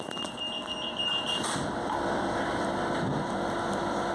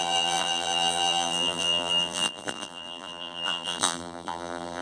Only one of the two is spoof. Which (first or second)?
second